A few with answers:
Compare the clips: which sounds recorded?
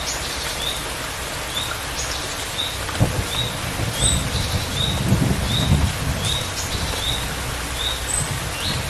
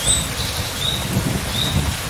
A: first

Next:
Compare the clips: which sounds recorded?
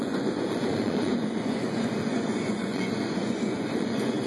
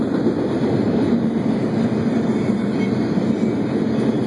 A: second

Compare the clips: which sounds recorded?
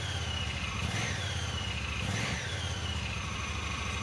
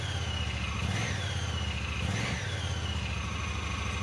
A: second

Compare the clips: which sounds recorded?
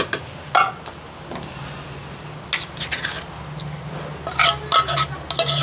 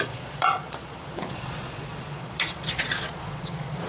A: first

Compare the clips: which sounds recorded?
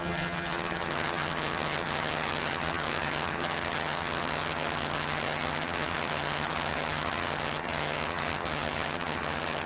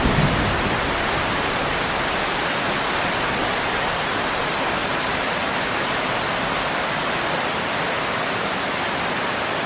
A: second